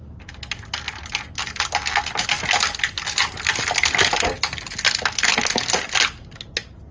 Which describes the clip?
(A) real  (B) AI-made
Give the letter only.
A